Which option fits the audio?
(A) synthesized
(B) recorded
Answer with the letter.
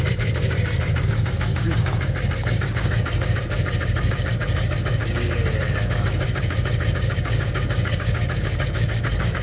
A